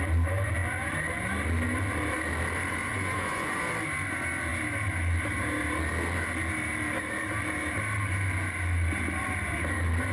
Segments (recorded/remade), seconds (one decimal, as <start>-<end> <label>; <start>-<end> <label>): 0.0-2.9 recorded; 2.9-3.6 remade; 3.6-10.1 recorded